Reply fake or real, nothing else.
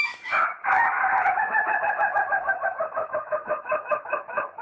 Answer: fake